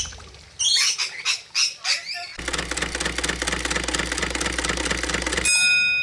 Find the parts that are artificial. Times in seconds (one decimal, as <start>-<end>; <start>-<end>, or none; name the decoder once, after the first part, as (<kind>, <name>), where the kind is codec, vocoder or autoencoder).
none